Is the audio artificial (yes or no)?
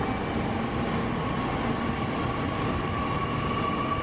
no